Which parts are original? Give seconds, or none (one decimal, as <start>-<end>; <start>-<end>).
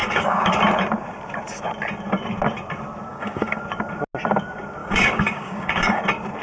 0.5-3.1; 3.6-4.8; 6.0-6.4